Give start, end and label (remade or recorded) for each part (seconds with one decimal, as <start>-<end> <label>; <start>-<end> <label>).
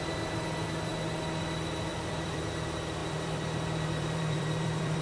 0.0-1.9 recorded; 1.9-2.4 remade; 2.4-3.0 recorded; 3.0-5.0 remade